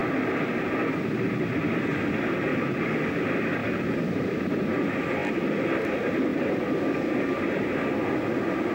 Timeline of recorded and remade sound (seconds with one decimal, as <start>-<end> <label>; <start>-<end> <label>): 0.0-2.5 recorded; 2.5-3.1 remade; 3.1-3.6 recorded; 3.6-4.1 remade; 4.1-8.7 recorded